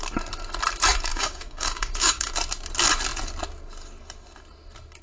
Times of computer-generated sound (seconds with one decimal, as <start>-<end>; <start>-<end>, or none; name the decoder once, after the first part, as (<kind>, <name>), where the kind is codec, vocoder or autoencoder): 1.1-2.3 (codec, DAC)